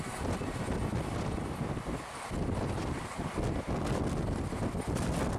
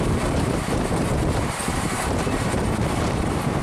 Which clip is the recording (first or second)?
first